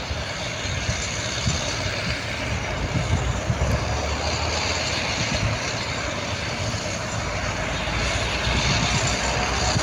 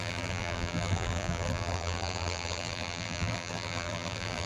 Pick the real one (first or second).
first